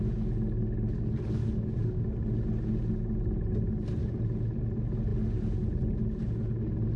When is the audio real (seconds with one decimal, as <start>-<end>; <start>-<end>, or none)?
0.0-1.4; 2.1-7.0